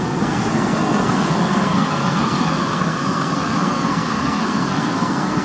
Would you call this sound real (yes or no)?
no